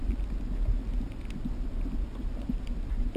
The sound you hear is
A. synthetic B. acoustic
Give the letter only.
B